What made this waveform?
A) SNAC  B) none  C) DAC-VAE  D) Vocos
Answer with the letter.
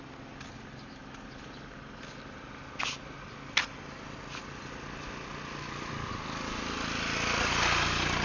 B